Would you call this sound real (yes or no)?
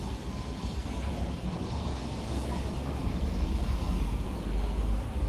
no